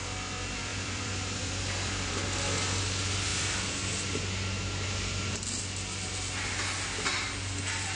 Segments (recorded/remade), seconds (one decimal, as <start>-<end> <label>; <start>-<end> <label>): 0.0-0.7 recorded; 0.7-2.1 remade; 2.1-8.0 recorded

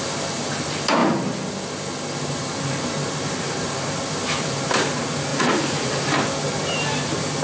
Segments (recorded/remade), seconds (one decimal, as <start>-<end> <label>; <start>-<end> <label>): 0.0-5.3 recorded; 5.3-6.0 remade; 6.0-7.4 recorded

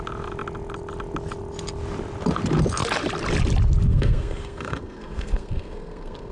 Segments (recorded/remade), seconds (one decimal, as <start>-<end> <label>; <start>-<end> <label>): 0.0-3.9 recorded; 3.9-6.3 remade